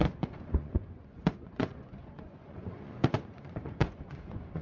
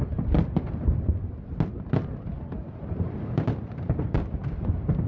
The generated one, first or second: first